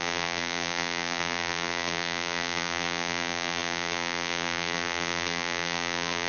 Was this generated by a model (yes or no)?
yes